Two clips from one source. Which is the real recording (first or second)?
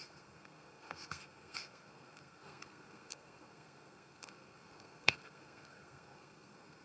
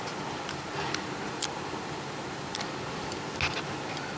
second